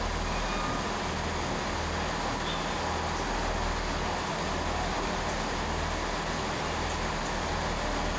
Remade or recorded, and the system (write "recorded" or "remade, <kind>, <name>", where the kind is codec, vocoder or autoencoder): recorded